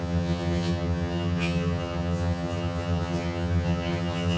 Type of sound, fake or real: fake